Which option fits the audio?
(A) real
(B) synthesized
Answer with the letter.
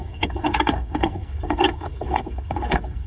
B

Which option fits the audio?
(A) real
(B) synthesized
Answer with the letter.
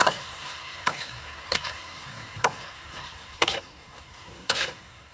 B